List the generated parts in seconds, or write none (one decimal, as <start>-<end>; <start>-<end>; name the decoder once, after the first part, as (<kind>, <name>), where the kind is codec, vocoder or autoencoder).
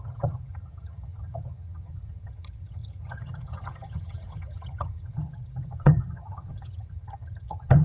0.0-7.8 (vocoder, HiFi-GAN)